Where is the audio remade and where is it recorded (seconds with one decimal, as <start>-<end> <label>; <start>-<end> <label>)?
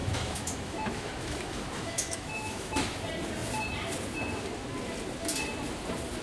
0.0-3.0 remade; 3.0-6.2 recorded